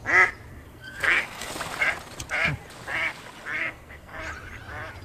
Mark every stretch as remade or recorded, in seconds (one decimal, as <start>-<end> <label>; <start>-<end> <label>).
0.0-0.5 recorded; 0.5-1.5 remade; 1.5-3.6 recorded; 3.6-4.2 remade; 4.2-5.0 recorded